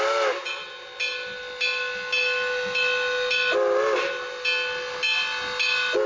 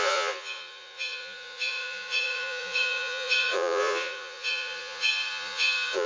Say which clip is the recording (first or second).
first